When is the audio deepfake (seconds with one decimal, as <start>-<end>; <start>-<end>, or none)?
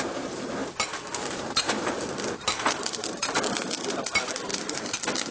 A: none